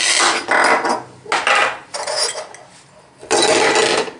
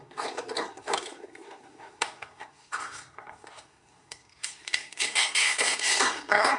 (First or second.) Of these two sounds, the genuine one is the first